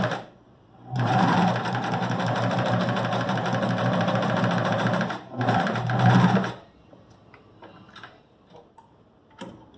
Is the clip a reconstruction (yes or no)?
yes